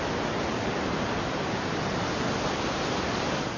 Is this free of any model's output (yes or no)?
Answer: yes